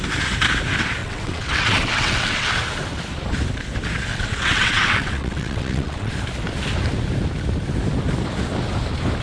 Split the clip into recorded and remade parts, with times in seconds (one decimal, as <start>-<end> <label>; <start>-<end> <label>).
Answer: 0.0-1.0 recorded; 1.0-2.5 remade; 2.5-4.1 recorded; 4.1-6.1 remade; 6.1-9.2 recorded